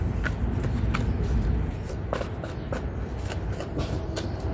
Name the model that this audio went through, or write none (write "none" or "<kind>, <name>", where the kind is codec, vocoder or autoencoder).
none